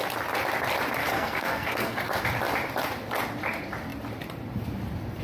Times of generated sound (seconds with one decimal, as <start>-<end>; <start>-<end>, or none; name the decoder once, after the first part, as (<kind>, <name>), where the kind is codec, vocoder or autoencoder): 1.0-2.2 (codec, SNAC)